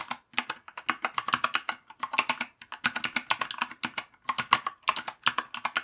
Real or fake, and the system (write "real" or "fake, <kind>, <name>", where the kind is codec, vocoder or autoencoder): real